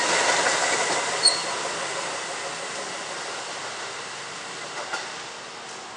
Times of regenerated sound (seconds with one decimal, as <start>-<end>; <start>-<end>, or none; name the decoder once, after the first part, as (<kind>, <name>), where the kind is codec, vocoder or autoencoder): none